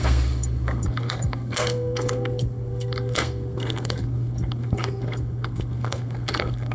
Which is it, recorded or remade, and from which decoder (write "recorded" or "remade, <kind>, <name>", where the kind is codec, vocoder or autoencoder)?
remade, codec, SNAC